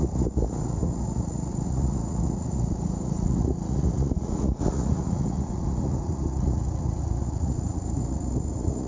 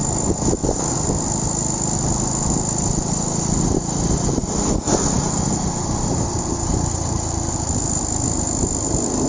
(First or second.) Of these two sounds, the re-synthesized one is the first